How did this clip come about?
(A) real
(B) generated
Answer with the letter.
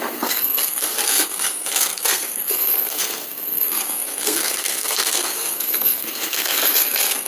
B